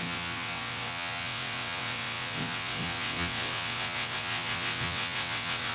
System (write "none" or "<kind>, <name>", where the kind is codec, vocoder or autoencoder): vocoder, WaveNeXt